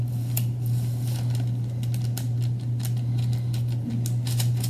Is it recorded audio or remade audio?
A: recorded